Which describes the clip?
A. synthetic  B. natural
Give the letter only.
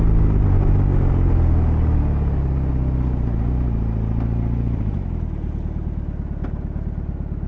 B